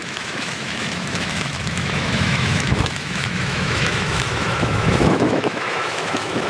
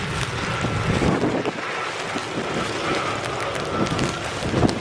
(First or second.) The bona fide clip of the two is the second